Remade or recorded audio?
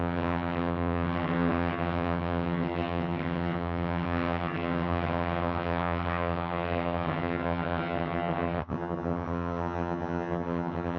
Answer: remade